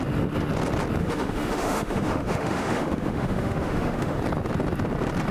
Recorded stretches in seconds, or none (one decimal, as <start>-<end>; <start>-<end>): 0.0-1.0; 4.2-5.3